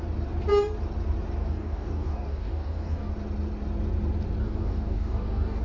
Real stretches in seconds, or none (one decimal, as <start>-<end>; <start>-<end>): 0.0-1.4; 3.1-4.4